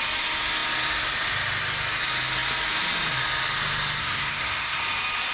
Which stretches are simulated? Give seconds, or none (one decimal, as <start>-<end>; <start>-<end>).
4.0-4.8